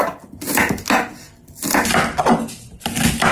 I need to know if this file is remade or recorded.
recorded